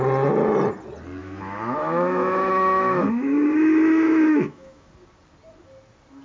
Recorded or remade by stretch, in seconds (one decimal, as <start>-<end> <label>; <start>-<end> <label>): 0.0-1.2 recorded; 1.2-4.9 remade; 4.9-6.2 recorded